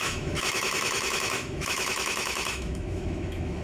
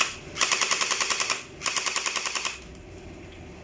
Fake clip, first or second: first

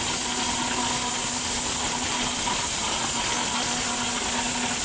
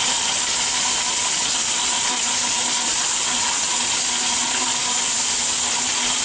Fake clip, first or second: second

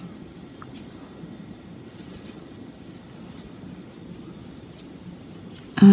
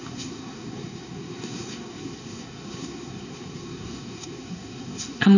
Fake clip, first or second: second